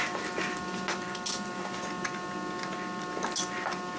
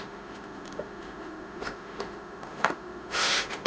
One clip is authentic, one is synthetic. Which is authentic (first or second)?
first